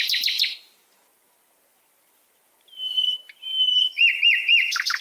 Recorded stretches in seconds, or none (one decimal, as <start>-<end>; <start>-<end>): 0.0-5.0